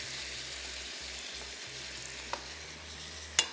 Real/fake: real